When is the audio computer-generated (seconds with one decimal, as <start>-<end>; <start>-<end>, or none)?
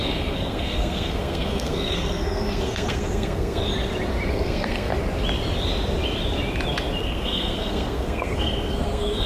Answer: 0.0-3.6; 4.3-4.9; 7.0-9.3